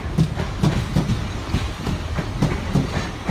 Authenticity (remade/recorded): recorded